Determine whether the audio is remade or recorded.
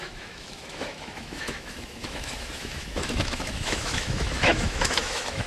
remade